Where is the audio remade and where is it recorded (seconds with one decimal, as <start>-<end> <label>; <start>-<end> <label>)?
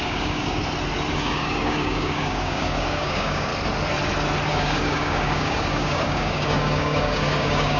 0.0-0.6 remade; 0.6-1.1 recorded; 1.1-3.5 remade; 3.5-4.5 recorded; 4.5-7.8 remade